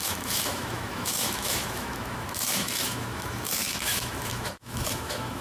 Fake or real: fake